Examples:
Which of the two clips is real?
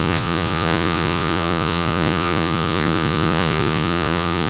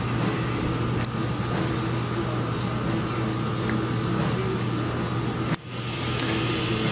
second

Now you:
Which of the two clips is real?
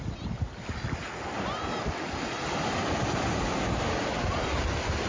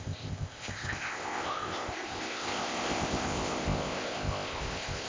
first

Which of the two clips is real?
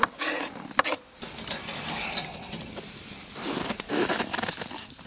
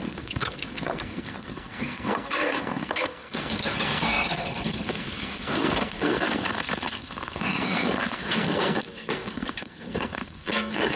first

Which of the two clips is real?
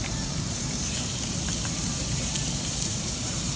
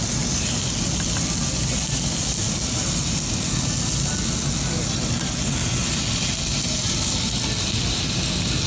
second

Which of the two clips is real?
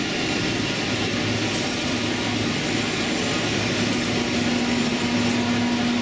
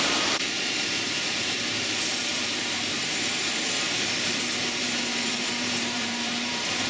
first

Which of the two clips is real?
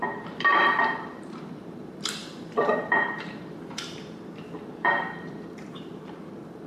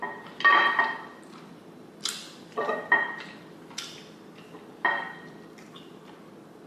second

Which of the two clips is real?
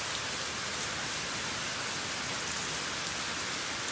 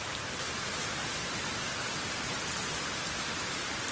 first